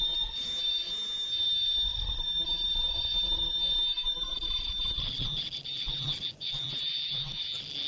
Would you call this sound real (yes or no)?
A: no